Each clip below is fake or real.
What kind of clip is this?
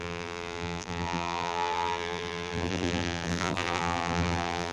fake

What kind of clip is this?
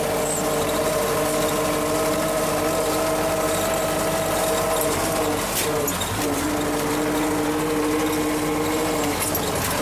real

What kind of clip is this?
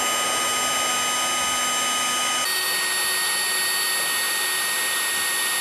real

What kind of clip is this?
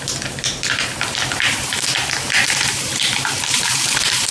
fake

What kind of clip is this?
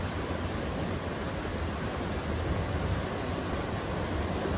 real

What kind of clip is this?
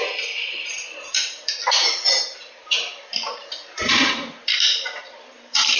fake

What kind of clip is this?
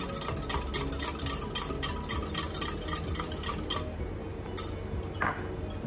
real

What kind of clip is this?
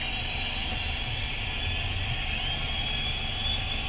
real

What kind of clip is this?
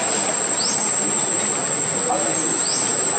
real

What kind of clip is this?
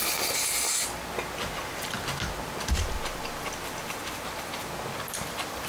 real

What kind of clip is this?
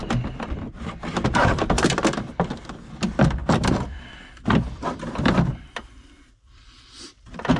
fake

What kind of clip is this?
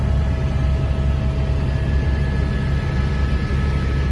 real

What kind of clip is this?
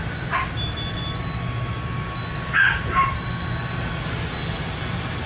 real